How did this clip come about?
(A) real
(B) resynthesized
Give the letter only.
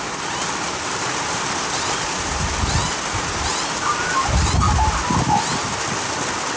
A